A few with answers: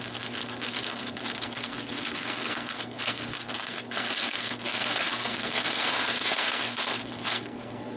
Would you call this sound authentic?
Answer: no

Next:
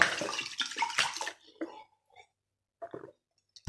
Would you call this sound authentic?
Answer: yes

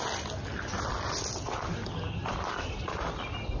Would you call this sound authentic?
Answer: yes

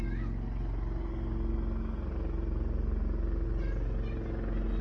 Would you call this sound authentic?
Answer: yes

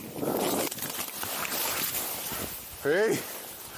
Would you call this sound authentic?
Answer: yes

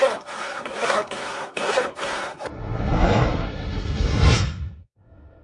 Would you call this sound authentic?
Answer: no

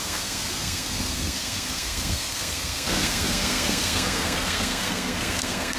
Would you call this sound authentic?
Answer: no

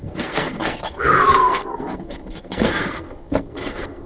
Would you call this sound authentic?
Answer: no